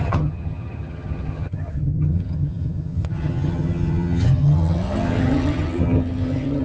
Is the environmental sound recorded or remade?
remade